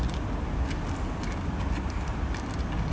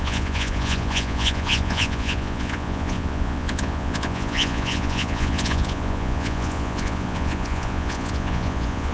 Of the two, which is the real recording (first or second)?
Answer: first